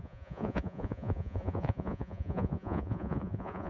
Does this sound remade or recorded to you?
remade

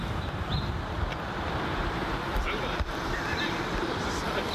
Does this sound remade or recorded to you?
remade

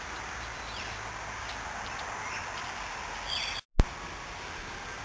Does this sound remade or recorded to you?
recorded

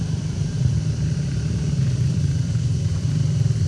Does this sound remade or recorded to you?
remade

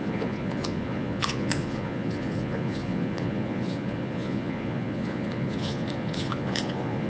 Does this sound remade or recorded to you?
remade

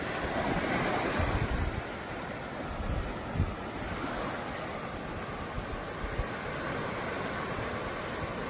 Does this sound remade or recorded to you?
recorded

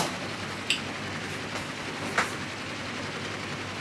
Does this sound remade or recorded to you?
recorded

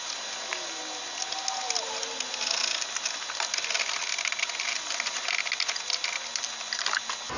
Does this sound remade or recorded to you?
recorded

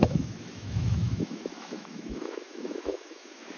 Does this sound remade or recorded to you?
remade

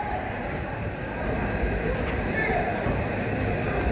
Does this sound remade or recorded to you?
remade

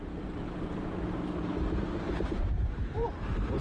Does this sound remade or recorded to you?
remade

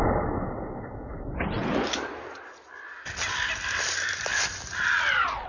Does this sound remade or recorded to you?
recorded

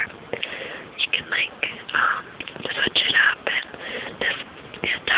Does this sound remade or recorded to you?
recorded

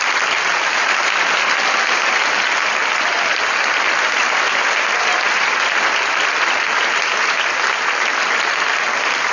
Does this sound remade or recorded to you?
recorded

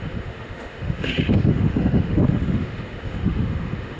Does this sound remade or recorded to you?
remade